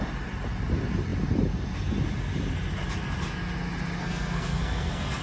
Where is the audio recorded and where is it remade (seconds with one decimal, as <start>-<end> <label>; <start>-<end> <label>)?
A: 0.0-4.0 recorded; 4.0-5.2 remade